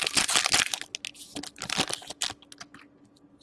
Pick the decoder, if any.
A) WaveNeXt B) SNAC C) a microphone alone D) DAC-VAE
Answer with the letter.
C